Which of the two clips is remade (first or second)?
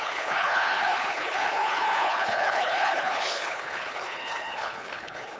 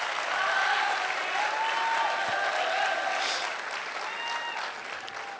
first